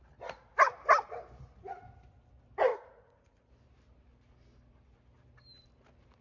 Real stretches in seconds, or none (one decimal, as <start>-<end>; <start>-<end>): 0.0-2.7; 3.5-6.2